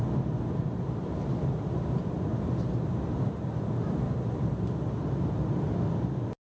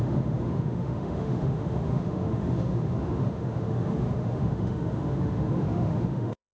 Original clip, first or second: first